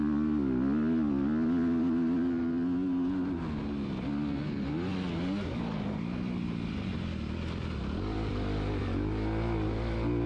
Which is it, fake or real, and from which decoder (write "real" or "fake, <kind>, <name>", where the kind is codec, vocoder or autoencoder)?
real